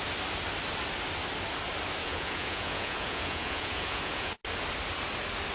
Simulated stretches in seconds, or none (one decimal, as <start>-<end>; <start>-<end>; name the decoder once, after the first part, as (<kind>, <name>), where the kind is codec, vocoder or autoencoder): 2.0-4.3 (vocoder, Vocos)